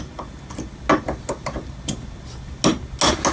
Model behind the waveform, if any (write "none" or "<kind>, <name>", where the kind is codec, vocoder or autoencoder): none